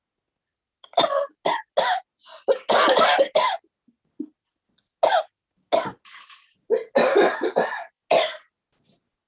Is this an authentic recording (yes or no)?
yes